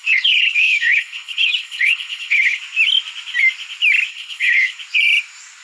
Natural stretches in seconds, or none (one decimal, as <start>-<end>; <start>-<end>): 2.6-4.1; 4.8-5.6